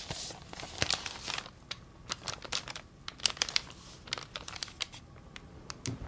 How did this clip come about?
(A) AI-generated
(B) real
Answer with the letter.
B